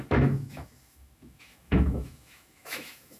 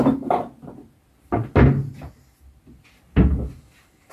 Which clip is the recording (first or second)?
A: second